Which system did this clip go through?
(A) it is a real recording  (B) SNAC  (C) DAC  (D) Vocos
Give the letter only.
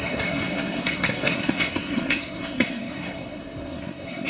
B